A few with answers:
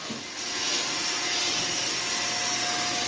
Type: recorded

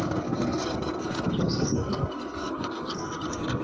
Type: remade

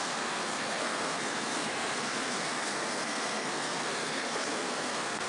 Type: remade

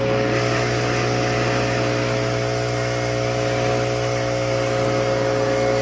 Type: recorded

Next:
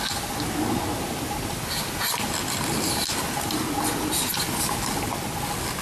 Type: recorded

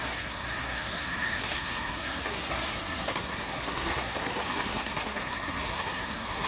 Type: remade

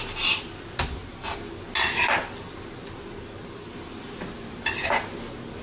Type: recorded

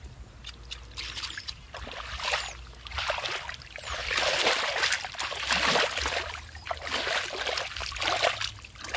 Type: recorded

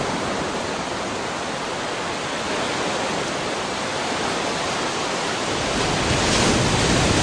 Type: recorded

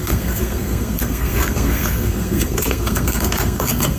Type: remade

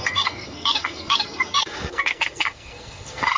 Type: remade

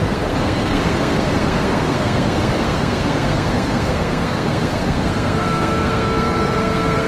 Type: remade